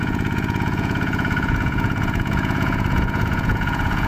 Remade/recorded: remade